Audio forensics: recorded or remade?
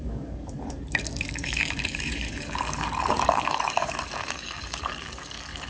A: remade